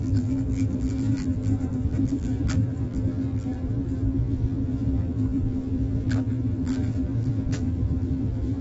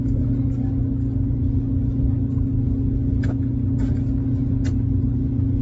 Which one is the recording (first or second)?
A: second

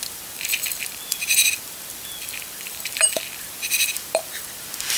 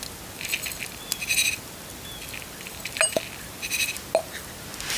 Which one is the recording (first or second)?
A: second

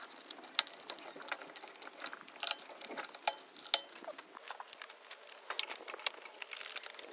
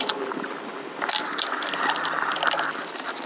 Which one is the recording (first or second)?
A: first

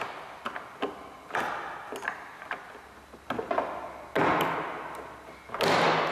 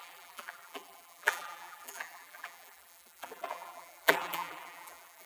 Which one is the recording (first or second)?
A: first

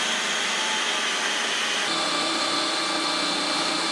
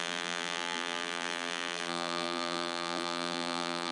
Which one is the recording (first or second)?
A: first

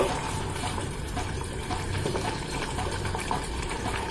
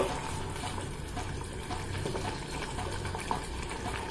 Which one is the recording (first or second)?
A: second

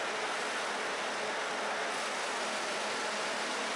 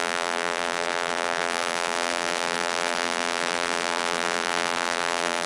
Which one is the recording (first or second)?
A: first